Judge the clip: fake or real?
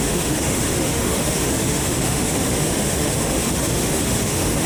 fake